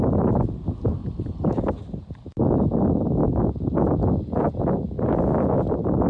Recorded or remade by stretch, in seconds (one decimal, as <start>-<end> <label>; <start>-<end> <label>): 0.0-6.1 recorded